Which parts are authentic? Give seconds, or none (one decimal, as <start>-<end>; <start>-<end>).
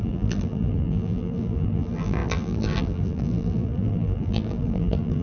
none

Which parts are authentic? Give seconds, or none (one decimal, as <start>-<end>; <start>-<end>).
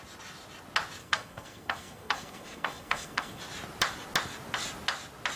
0.0-1.0; 3.4-5.4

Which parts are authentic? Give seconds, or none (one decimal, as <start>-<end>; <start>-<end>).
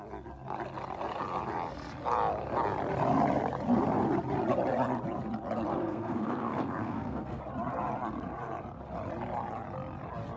0.0-5.8; 7.4-10.4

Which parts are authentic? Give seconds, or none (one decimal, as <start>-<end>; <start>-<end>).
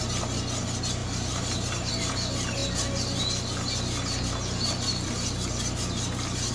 0.0-1.0; 1.9-6.5